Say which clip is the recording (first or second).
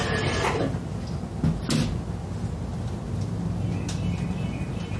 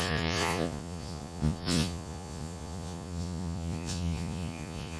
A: first